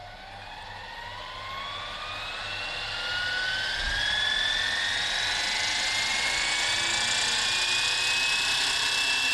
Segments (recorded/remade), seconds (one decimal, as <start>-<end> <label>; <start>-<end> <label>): 0.0-6.1 recorded; 6.1-6.7 remade; 6.7-9.3 recorded